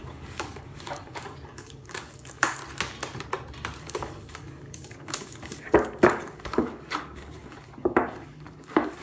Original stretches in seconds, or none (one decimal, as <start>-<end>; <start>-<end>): 2.6-3.8